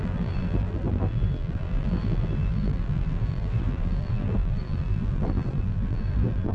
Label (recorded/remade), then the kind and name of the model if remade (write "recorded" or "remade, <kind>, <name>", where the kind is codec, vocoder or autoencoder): remade, vocoder, BigVGAN v2